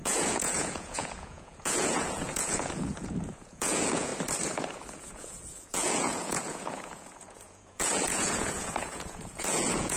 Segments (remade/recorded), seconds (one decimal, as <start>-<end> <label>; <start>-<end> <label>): 0.0-4.1 remade; 4.1-4.9 recorded; 4.9-10.0 remade